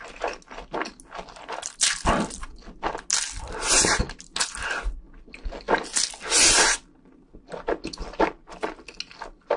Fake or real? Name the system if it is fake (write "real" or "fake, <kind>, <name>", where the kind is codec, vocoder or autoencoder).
real